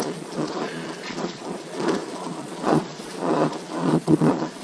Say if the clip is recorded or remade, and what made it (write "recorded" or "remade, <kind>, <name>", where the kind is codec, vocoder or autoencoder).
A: remade, vocoder, Vocos